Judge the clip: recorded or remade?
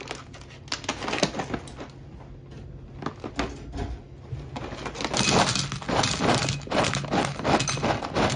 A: recorded